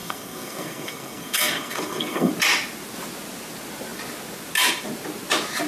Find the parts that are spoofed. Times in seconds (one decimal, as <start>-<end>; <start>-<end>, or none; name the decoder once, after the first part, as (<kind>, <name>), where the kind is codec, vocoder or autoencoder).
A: 0.0-2.3 (codec, SNAC)